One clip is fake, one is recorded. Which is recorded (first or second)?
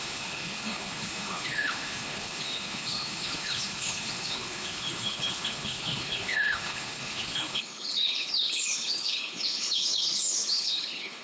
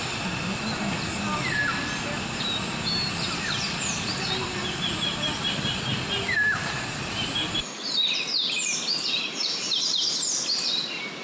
second